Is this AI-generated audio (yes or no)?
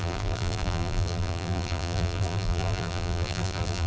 yes